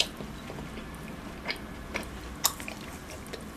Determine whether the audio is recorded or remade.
recorded